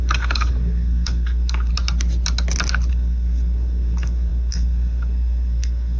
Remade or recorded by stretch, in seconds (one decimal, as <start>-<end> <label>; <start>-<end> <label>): 0.0-1.7 remade; 1.7-2.9 recorded; 2.9-6.0 remade